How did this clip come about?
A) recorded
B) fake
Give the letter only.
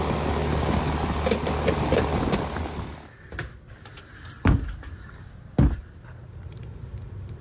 A